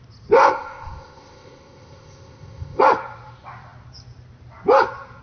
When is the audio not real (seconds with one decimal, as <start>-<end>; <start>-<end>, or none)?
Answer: 0.4-2.8